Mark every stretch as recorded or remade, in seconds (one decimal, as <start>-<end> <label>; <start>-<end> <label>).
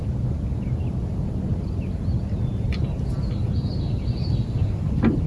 0.0-5.3 recorded